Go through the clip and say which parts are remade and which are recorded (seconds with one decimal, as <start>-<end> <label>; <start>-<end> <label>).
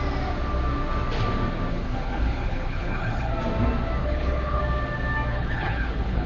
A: 0.0-1.7 recorded; 1.7-3.3 remade; 3.3-4.0 recorded; 4.0-4.6 remade; 4.6-5.3 recorded; 5.3-6.3 remade